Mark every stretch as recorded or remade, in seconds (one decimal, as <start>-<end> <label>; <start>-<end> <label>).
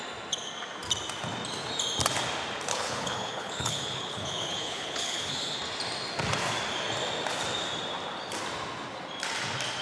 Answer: 0.0-2.7 recorded; 2.7-5.6 remade; 5.6-9.8 recorded